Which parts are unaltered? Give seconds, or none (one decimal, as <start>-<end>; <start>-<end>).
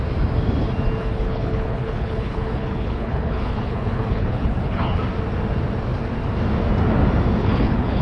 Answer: 0.0-1.0; 5.0-7.4